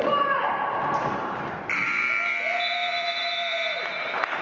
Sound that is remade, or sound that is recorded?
remade